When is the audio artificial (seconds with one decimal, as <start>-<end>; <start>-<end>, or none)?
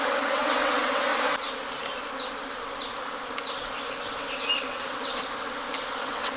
0.0-1.1; 4.6-5.1; 6.0-6.4